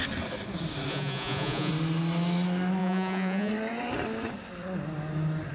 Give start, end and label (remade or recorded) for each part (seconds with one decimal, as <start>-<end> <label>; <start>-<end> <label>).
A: 0.0-0.9 recorded; 0.9-1.7 remade; 1.7-2.8 recorded; 2.8-3.5 remade; 3.5-5.5 recorded